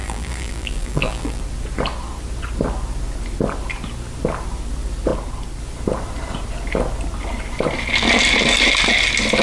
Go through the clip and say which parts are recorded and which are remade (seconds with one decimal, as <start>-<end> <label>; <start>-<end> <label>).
0.0-1.4 remade; 1.4-9.4 recorded